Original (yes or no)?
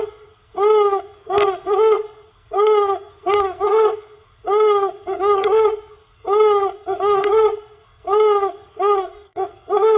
no